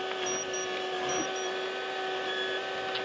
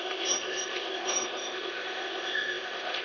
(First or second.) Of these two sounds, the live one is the first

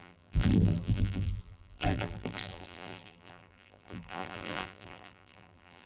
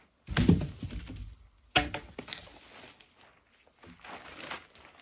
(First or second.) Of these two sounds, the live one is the second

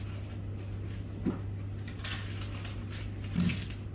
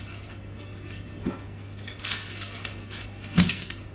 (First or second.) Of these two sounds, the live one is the first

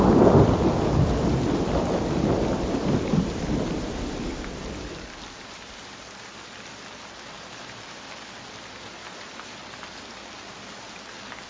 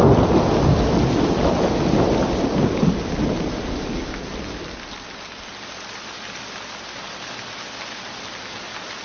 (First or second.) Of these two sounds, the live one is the second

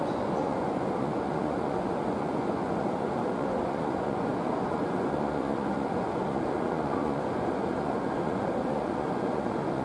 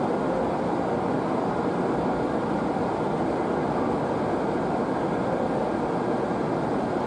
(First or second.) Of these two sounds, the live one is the second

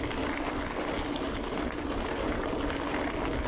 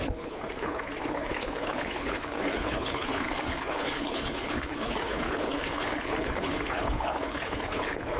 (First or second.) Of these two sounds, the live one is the first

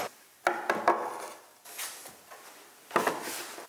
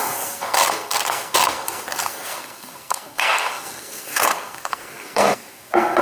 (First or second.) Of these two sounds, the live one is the first